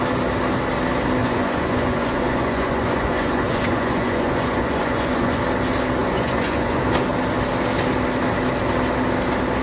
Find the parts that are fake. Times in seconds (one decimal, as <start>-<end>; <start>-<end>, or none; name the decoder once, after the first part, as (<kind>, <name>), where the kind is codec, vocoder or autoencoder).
1.2-5.4 (vocoder, Vocos); 6.0-6.8